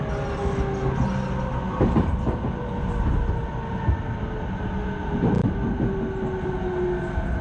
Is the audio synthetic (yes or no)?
no